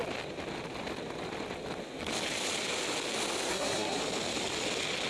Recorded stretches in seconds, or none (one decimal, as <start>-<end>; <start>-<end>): 0.0-3.5; 4.0-5.1